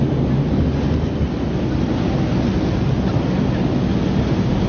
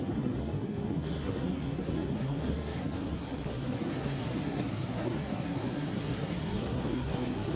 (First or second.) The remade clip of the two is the second